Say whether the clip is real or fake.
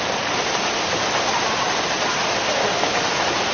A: real